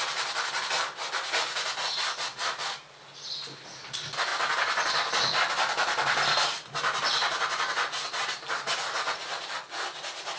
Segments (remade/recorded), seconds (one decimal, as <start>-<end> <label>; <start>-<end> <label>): 0.0-10.4 recorded